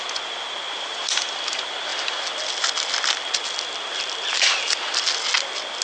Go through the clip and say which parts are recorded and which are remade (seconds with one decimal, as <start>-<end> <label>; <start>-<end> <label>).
0.0-5.8 recorded